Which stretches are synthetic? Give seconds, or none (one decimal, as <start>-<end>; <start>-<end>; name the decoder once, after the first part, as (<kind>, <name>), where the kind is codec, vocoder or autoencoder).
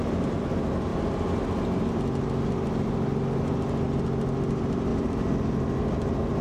none